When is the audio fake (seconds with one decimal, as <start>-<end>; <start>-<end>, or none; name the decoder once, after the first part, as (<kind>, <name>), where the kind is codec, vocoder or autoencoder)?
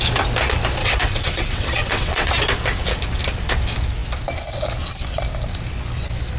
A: 0.8-2.3 (vocoder, WaveNeXt)